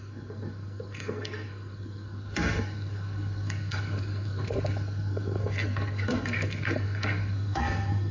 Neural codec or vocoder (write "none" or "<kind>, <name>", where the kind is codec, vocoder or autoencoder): codec, SNAC